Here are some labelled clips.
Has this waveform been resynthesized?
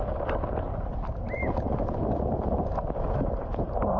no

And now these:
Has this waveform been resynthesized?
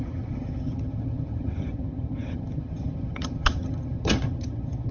yes